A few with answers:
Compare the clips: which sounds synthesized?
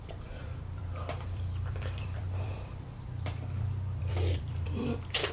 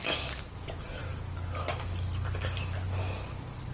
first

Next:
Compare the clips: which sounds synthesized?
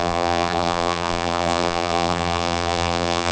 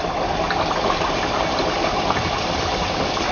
first